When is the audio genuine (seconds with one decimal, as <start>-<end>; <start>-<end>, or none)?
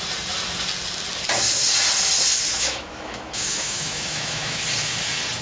0.0-2.5; 4.6-5.4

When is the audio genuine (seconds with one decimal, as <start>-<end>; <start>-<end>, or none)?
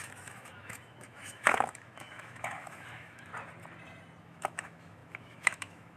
3.3-4.2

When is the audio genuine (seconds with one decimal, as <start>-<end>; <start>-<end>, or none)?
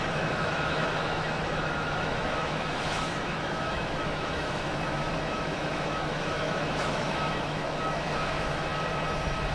8.7-9.5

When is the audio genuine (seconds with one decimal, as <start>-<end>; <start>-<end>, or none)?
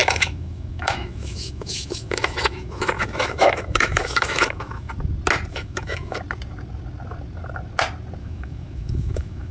4.9-5.5; 6.2-8.2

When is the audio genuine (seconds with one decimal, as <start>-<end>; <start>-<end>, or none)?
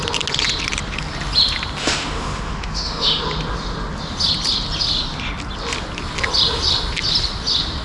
0.0-1.8; 3.2-7.8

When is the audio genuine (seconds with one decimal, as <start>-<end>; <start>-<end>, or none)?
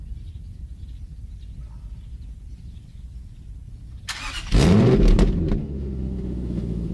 0.0-5.6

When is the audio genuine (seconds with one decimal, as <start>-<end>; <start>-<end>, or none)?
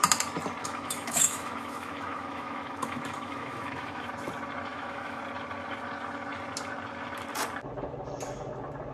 0.0-0.6; 4.1-4.7; 5.2-8.9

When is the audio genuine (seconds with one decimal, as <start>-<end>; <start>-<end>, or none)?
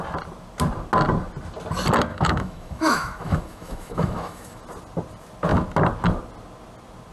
0.0-2.1; 4.6-7.1